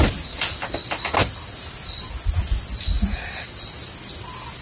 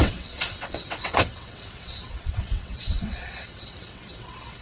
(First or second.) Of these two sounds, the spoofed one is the second